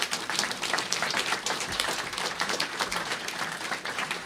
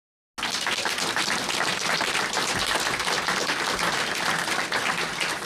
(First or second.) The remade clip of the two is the first